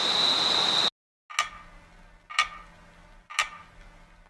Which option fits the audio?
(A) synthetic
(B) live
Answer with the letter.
B